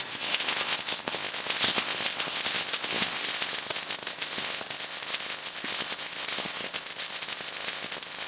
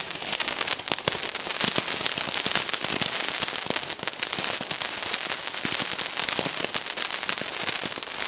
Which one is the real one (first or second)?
second